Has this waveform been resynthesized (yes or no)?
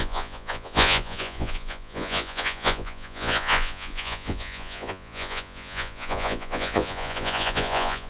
yes